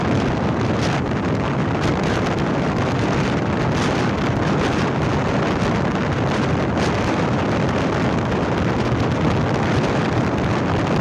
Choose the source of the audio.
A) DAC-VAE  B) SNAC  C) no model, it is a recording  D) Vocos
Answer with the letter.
C